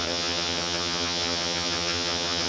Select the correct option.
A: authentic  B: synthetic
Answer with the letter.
B